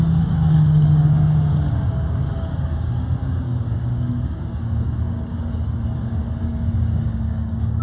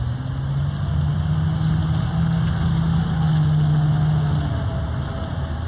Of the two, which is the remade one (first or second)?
first